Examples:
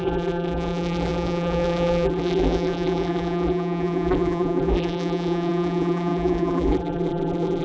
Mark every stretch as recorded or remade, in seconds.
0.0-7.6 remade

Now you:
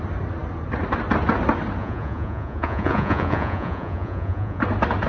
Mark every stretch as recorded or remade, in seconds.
0.0-1.8 recorded; 1.8-4.6 remade; 4.6-5.1 recorded

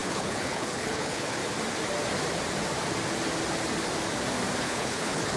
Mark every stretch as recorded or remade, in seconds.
0.0-1.4 remade; 1.4-4.6 recorded; 4.6-5.4 remade

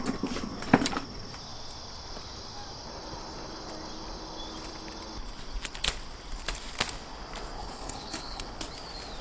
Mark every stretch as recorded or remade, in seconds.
0.0-7.6 recorded; 7.6-8.6 remade; 8.6-9.2 recorded

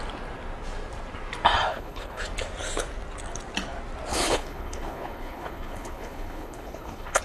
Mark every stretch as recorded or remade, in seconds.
0.0-1.7 recorded; 1.7-2.2 remade; 2.2-4.1 recorded; 4.1-7.2 remade

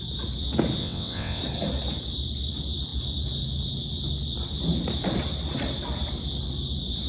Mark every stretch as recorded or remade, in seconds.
0.0-0.8 recorded; 0.8-1.4 remade; 1.4-7.1 recorded

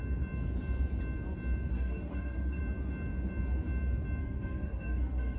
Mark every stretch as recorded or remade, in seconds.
0.0-1.7 recorded; 1.7-2.6 remade; 2.6-4.2 recorded; 4.2-5.4 remade